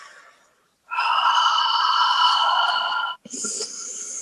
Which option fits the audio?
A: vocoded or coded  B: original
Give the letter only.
B